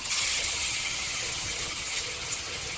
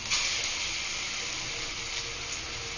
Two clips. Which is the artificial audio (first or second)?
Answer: first